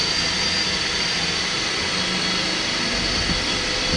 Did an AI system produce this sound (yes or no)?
no